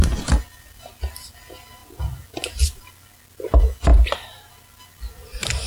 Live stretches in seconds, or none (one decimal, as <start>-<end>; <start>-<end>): 0.0-3.9; 4.5-5.7